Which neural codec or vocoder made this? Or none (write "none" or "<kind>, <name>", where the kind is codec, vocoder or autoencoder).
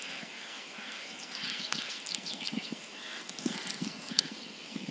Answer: codec, SNAC